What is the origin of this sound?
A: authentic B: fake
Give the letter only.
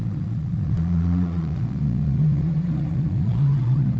B